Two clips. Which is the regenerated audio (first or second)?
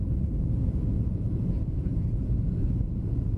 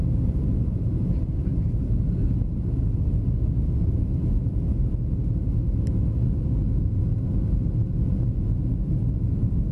first